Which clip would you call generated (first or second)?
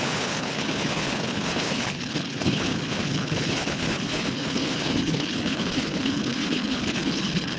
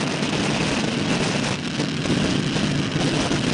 first